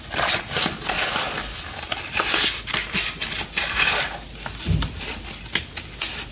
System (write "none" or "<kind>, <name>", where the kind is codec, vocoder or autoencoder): none